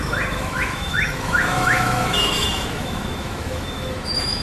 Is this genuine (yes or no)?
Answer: no